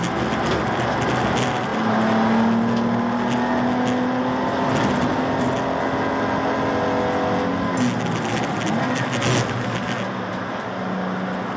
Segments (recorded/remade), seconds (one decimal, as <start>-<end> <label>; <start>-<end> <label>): 0.0-11.6 recorded